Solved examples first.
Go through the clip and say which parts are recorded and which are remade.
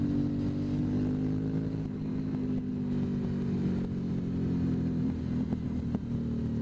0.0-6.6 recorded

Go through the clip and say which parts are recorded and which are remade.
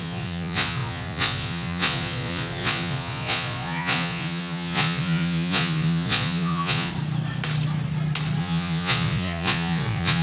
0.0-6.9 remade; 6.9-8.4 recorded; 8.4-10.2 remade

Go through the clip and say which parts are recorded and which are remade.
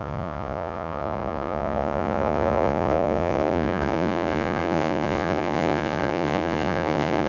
0.0-7.3 remade